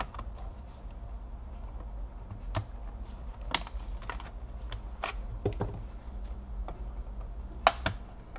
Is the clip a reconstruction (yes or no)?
no